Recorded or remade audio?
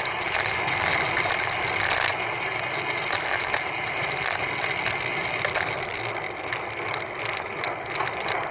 recorded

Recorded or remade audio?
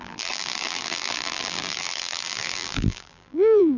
remade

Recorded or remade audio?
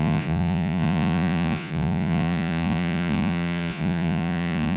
remade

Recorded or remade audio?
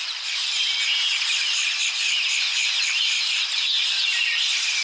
recorded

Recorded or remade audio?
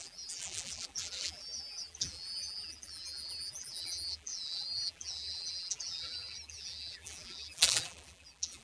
remade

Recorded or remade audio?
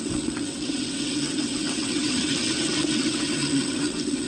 remade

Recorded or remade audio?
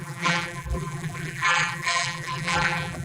remade